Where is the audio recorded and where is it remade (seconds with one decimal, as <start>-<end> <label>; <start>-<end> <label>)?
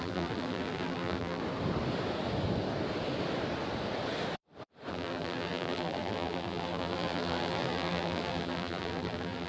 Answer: 0.0-1.4 remade; 1.4-4.9 recorded; 4.9-9.5 remade